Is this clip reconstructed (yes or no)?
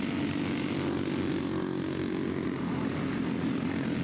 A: no